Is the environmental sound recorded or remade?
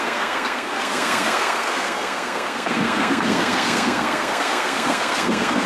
remade